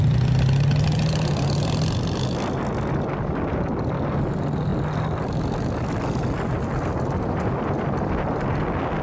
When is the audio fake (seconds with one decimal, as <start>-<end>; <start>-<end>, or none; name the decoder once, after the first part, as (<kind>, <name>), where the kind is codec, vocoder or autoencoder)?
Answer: none